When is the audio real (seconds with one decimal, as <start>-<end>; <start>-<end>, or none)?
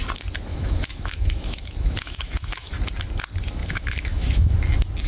0.0-0.5; 2.7-3.6; 4.5-5.1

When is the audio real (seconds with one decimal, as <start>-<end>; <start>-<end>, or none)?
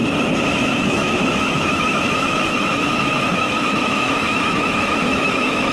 0.0-0.5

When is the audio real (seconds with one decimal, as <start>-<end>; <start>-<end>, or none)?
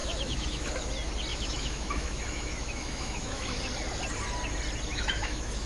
0.9-1.3; 3.6-4.9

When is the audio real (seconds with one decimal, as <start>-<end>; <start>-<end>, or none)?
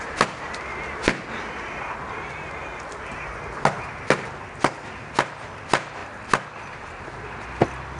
0.0-8.0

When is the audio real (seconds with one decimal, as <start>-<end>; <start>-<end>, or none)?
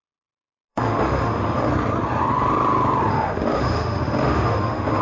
0.0-0.7; 1.7-3.1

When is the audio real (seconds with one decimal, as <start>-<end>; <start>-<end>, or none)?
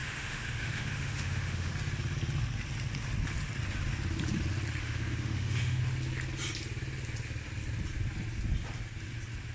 1.7-4.8; 5.8-9.5